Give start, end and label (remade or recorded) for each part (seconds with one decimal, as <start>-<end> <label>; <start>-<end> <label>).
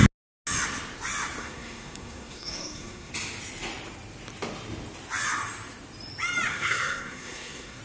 0.0-1.4 recorded; 1.4-3.1 remade; 3.1-6.5 recorded; 6.5-7.8 remade